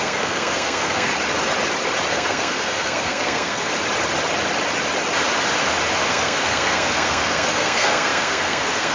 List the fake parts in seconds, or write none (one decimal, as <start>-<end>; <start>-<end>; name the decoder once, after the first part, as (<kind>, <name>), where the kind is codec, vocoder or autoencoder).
0.0-1.1 (codec, SNAC); 2.1-3.7; 6.1-8.9